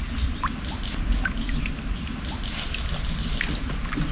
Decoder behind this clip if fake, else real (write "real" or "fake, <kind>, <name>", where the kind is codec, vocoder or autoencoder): real